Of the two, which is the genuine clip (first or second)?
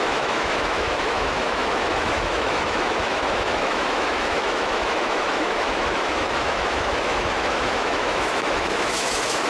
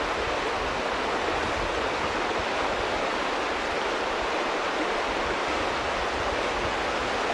second